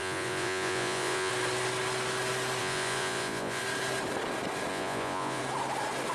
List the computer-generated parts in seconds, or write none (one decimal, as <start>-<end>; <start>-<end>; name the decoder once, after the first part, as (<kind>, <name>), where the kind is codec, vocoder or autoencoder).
0.0-1.3 (vocoder, Vocos); 2.6-3.6; 4.7-5.4